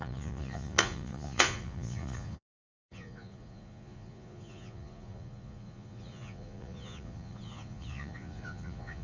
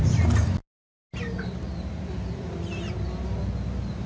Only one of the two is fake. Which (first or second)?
first